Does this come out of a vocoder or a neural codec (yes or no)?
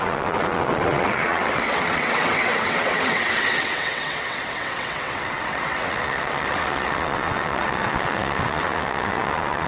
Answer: yes